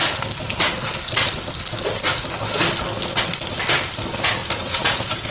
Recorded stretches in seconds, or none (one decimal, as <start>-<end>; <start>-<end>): 0.0-4.4